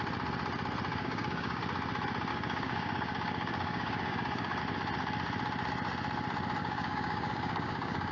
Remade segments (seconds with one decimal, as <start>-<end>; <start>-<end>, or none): 0.9-1.6; 2.3-4.6; 6.6-8.1